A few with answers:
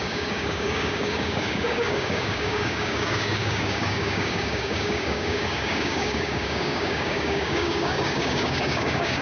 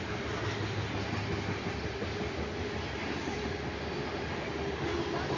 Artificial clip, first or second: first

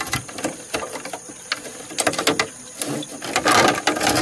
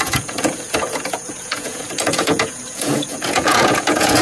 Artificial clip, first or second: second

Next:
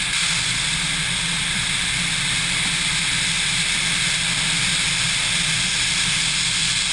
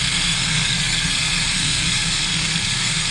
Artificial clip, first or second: second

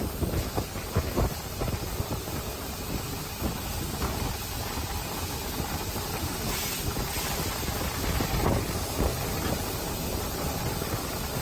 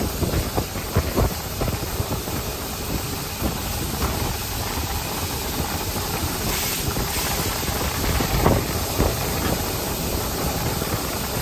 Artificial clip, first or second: second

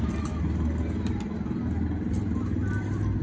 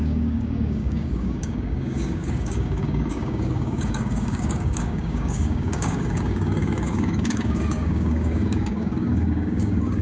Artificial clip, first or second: second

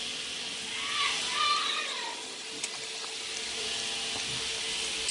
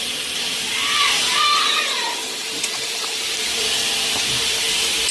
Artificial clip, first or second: second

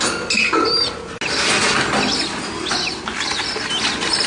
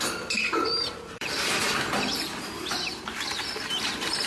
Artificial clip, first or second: second